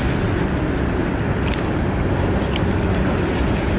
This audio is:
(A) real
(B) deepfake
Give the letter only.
A